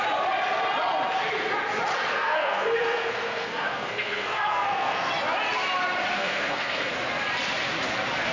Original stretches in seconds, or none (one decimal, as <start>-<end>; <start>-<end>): 0.0-2.1; 5.1-6.1; 6.9-8.3